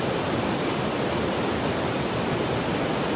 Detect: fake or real real